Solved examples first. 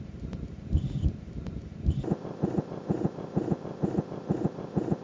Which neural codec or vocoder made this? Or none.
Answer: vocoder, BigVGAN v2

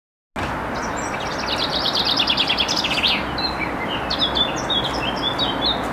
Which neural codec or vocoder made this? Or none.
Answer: none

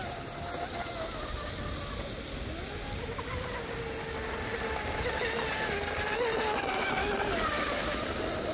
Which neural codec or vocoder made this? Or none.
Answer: none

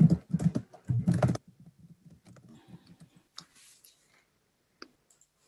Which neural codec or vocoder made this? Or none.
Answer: none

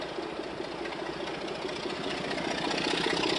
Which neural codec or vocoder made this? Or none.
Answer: none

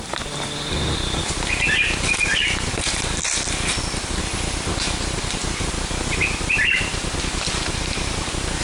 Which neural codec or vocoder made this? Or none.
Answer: vocoder, BigVGAN v2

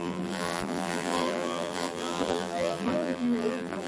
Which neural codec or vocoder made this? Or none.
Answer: vocoder, BigVGAN v2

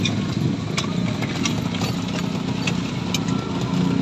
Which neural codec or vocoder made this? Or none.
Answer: none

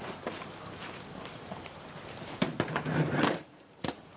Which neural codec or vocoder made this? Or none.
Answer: vocoder, BigVGAN v2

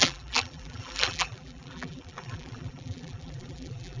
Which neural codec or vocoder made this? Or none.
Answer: vocoder, BigVGAN v2